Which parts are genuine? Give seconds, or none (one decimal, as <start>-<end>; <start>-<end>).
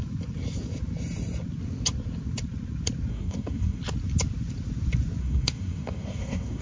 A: 0.0-3.1; 3.8-5.2